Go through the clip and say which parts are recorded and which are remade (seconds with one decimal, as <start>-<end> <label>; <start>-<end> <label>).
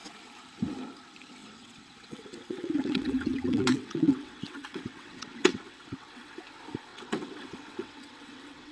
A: 0.0-1.4 recorded; 1.4-6.4 remade; 6.4-6.9 recorded; 6.9-8.7 remade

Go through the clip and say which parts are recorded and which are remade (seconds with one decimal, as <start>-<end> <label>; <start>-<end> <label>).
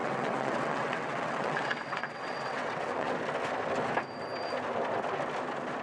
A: 0.0-3.1 remade; 3.1-5.8 recorded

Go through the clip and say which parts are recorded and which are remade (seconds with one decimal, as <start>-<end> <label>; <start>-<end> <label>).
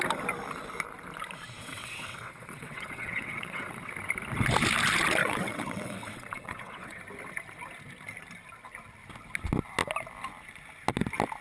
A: 0.0-1.6 recorded; 1.6-3.9 remade; 3.9-5.2 recorded; 5.2-7.0 remade; 7.0-11.4 recorded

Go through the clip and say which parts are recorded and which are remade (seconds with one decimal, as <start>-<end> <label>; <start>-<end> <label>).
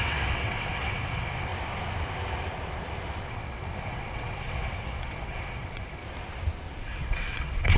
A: 0.0-1.5 remade; 1.5-3.3 recorded; 3.3-6.0 remade; 6.0-6.8 recorded; 6.8-7.8 remade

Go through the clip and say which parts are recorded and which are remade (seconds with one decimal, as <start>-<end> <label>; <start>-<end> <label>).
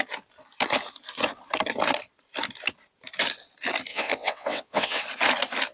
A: 0.0-3.9 recorded; 3.9-5.0 remade; 5.0-5.7 recorded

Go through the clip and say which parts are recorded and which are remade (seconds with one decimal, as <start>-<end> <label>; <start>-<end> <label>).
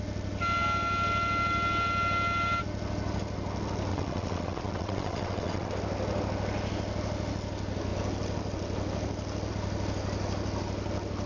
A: 0.0-3.9 recorded; 3.9-5.7 remade; 5.7-11.3 recorded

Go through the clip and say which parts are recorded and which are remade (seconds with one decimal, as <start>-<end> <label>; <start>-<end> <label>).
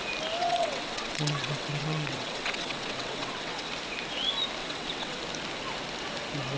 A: 0.0-0.4 recorded; 0.4-3.7 remade; 3.7-4.6 recorded; 4.6-5.2 remade; 5.2-6.6 recorded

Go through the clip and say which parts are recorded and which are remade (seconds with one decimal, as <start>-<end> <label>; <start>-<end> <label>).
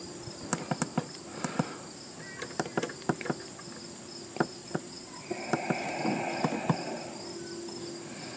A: 0.0-4.6 recorded; 4.6-5.2 remade; 5.2-8.4 recorded